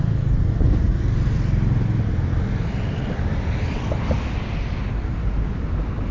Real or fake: real